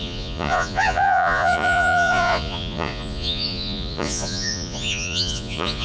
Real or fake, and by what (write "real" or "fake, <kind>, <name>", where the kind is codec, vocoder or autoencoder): fake, vocoder, Vocos